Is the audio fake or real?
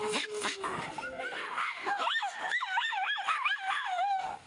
fake